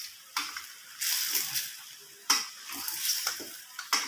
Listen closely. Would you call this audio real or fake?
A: fake